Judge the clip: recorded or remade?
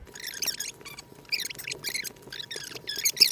remade